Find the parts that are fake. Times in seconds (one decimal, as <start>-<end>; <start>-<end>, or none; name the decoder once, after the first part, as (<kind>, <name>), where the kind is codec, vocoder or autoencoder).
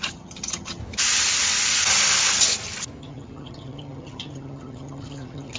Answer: 0.0-0.8 (vocoder, HiFi-GAN); 3.0-5.6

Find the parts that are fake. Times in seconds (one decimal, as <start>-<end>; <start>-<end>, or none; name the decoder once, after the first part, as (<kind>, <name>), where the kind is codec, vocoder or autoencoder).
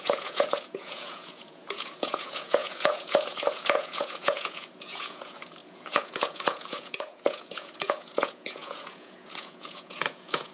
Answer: 0.0-10.5 (vocoder, Vocos)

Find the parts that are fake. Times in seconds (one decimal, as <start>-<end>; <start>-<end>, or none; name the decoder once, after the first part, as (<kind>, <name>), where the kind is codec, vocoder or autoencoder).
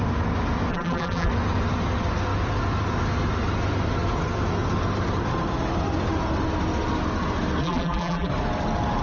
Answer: 0.7-1.3 (vocoder, BigVGAN v2); 7.6-8.3